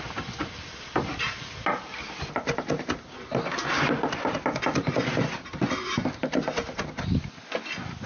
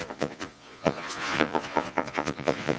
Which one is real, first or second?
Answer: first